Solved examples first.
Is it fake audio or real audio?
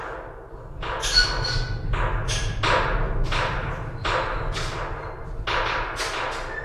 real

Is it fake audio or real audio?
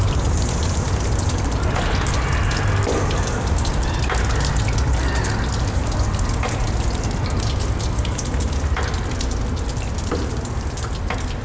real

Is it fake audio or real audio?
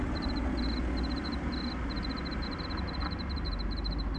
real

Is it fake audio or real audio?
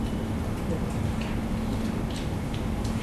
real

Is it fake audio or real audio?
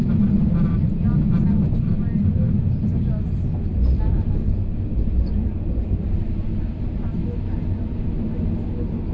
real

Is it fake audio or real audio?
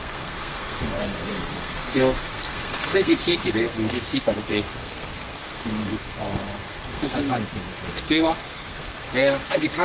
fake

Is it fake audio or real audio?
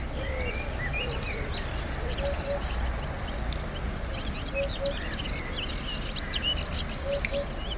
real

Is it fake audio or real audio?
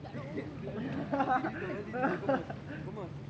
real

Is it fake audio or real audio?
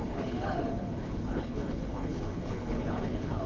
fake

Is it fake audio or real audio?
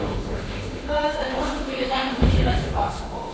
fake